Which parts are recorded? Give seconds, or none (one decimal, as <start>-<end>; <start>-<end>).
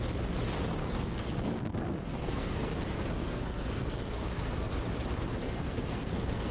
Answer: 0.0-0.8; 4.7-5.4